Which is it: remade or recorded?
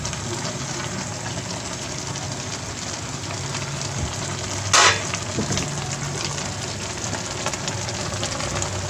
recorded